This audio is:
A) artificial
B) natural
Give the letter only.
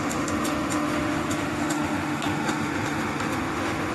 A